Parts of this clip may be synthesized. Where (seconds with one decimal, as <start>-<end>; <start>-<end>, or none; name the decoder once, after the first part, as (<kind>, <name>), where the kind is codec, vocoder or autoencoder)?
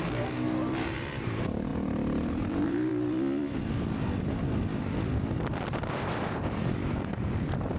0.0-2.9 (vocoder, BigVGAN v2)